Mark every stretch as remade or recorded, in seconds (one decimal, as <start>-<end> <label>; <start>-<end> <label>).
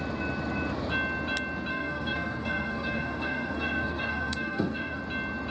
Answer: 0.0-1.7 recorded; 1.7-5.0 remade; 5.0-5.5 recorded